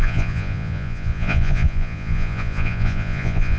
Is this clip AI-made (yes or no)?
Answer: yes